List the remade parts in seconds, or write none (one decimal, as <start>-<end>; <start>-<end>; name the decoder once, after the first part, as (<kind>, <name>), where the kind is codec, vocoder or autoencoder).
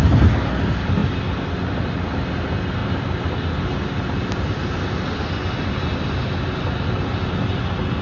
none